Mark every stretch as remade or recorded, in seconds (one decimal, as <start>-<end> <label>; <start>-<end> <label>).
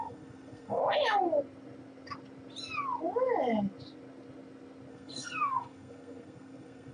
0.0-0.8 remade; 0.8-4.9 recorded; 4.9-6.9 remade